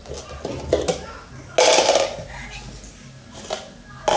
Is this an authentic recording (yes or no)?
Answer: yes